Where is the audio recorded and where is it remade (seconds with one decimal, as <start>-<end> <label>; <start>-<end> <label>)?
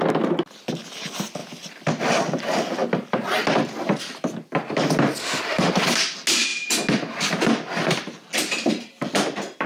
0.0-5.2 recorded; 5.2-5.7 remade; 5.7-9.7 recorded